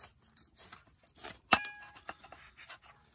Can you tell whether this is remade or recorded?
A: recorded